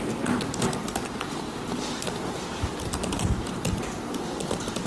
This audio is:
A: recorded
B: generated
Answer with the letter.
A